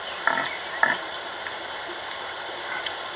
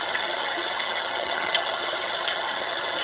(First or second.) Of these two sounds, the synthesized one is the second